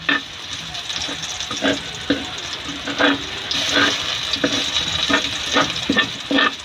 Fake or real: real